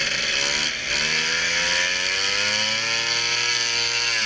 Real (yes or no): yes